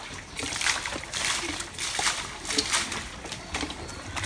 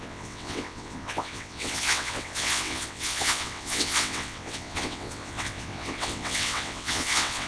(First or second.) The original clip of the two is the first